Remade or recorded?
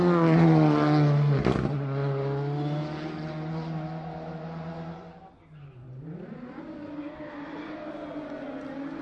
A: recorded